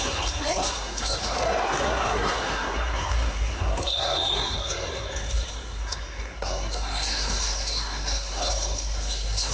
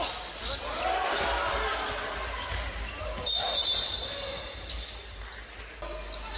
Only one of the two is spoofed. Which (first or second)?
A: first